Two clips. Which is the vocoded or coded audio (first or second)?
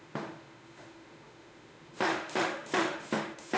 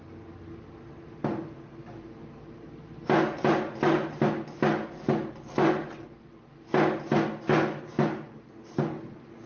first